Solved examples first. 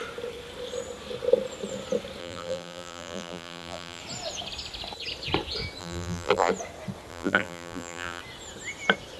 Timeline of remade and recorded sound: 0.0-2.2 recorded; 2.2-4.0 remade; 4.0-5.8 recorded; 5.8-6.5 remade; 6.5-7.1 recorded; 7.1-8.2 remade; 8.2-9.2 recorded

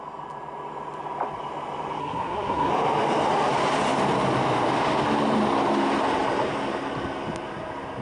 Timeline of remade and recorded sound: 0.0-2.0 recorded; 2.0-2.7 remade; 2.7-8.0 recorded